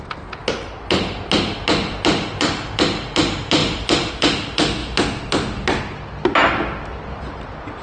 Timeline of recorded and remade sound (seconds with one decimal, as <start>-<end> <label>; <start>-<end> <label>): 0.0-7.8 recorded